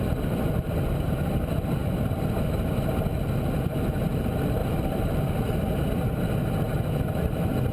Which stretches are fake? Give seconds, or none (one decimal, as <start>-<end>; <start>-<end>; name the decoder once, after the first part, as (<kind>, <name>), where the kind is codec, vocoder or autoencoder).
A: 4.6-5.2 (vocoder, BigVGAN v2)